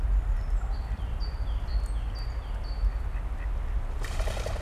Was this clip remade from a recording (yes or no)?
no